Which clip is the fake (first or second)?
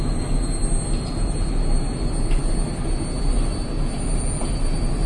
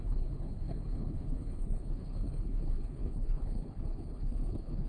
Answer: second